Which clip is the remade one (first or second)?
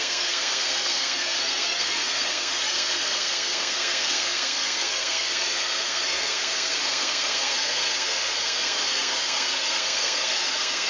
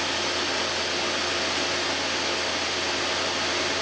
first